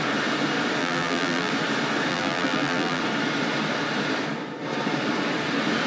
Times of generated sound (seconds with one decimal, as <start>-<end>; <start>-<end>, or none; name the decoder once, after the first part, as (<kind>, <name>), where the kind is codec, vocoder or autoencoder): 0.8-1.5 (vocoder, BigVGAN v2); 2.1-3.0